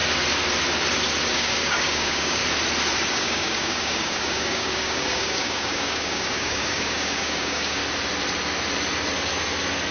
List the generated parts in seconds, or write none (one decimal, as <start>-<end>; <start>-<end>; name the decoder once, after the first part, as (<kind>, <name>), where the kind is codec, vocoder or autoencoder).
1.3-2.4 (codec, DAC); 3.1-7.8